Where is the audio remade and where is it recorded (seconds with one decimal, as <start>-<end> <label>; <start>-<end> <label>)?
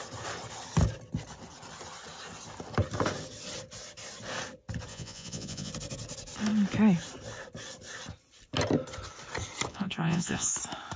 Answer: 0.0-4.9 recorded; 4.9-5.7 remade; 5.7-9.7 recorded; 9.7-10.5 remade; 10.5-11.0 recorded